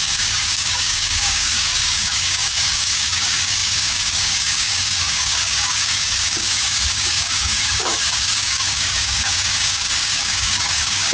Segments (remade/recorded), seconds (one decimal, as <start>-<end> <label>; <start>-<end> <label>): 0.0-11.1 remade